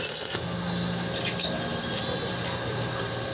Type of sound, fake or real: real